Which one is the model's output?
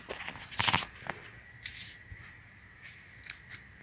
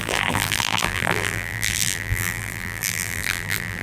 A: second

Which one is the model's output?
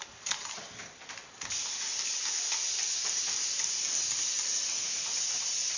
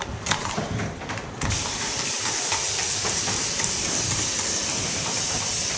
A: second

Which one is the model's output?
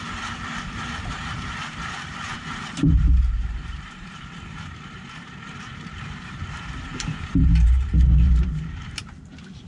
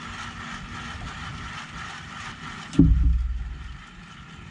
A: first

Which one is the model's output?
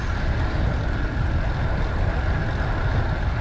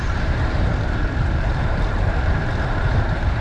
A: second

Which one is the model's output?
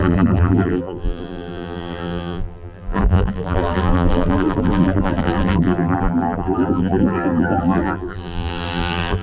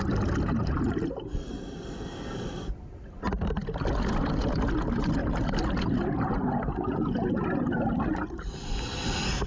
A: first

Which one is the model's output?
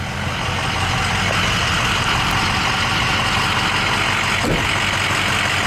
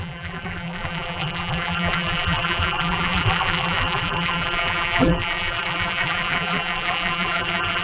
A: second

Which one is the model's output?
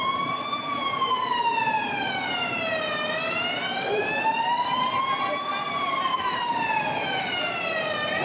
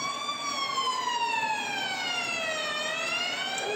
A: first